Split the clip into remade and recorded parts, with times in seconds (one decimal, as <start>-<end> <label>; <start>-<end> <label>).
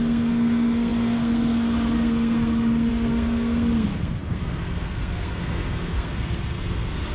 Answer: 0.0-7.1 remade